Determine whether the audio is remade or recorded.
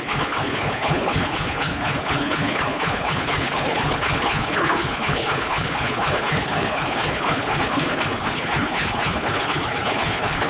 remade